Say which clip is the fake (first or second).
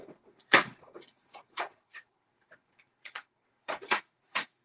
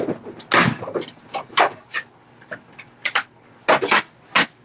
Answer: first